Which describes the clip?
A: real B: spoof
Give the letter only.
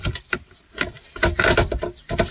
A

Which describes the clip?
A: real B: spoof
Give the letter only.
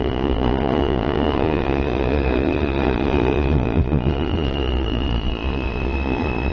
B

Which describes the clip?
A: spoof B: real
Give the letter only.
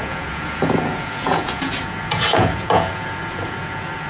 A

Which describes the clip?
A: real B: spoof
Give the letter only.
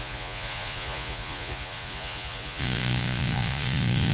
B